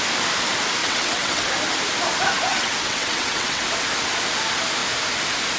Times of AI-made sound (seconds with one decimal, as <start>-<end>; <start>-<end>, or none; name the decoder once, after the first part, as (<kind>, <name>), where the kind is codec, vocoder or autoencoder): 0.8-1.5 (vocoder, WaveNeXt); 2.5-3.6